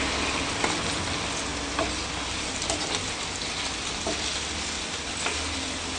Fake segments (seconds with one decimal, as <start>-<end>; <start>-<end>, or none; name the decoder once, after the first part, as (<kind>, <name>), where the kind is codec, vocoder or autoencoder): none